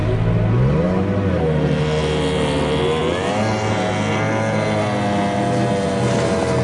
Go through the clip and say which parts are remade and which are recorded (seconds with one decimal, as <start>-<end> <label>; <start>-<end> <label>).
0.0-6.6 recorded